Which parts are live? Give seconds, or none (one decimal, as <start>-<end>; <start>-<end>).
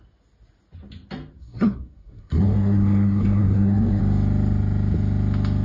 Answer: 0.0-1.4; 4.0-5.6